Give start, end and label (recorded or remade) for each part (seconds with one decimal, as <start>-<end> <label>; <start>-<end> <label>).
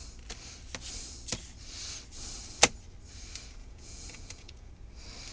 0.0-3.6 recorded; 3.6-4.7 remade; 4.7-5.3 recorded